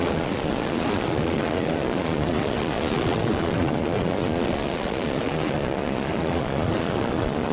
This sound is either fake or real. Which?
fake